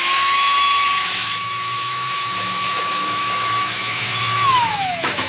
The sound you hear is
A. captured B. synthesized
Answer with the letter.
B